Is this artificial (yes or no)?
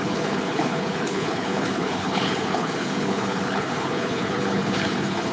yes